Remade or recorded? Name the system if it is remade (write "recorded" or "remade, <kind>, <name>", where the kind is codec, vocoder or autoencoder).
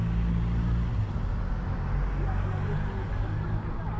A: recorded